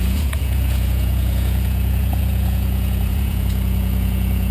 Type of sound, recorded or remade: remade